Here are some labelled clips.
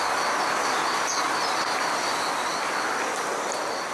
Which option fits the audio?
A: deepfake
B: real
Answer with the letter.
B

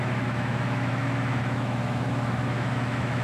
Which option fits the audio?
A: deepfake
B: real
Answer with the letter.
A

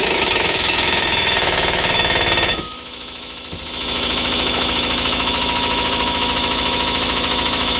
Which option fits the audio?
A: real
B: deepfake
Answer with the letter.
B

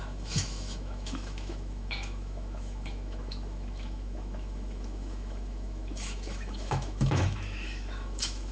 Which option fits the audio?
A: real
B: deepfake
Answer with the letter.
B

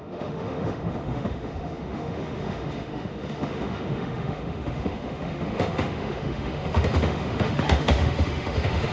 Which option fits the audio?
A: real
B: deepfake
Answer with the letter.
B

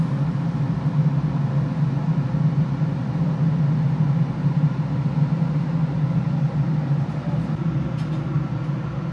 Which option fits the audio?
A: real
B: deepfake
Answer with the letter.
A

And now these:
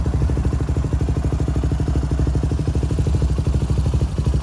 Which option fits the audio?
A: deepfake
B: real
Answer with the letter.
B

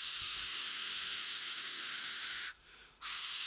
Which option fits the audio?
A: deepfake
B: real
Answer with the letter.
A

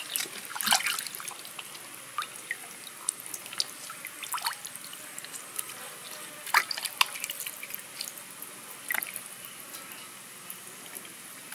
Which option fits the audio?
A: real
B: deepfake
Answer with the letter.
A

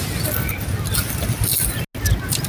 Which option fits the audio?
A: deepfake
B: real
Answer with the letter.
B